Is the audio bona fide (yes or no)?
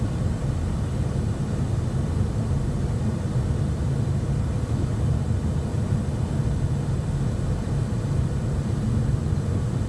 yes